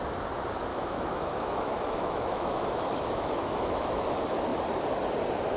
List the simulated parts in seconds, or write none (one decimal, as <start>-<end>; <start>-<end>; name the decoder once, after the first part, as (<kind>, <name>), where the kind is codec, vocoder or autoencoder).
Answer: 0.7-4.1 (autoencoder, DAC-VAE)